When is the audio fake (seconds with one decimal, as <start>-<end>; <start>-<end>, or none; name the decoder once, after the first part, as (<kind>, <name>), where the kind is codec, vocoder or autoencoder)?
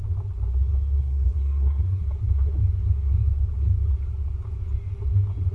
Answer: 1.0-2.0 (codec, SNAC)